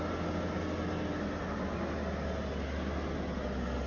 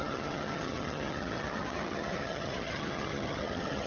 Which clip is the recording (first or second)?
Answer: first